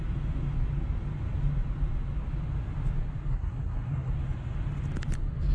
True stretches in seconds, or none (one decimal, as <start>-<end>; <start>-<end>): 0.0-3.3; 4.1-5.5